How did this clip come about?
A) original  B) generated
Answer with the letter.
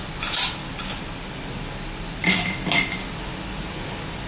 A